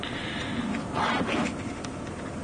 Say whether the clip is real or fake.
real